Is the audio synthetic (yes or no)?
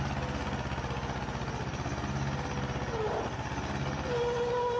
no